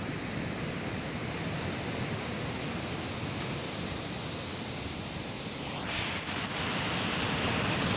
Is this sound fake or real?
real